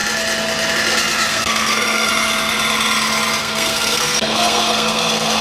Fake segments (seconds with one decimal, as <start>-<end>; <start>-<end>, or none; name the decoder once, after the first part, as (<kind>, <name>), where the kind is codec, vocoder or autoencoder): 1.3-2.1 (codec, SNAC); 3.4-5.4